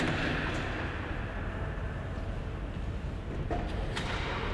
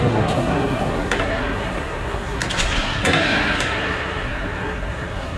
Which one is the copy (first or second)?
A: second